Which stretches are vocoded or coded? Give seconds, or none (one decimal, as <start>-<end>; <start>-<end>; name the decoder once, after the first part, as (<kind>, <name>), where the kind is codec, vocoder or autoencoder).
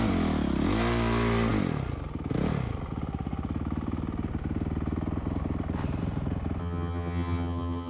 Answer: 6.6-7.9 (vocoder, HiFi-GAN)